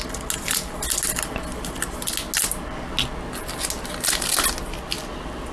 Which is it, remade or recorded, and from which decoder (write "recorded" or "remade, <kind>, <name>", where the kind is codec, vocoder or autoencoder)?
recorded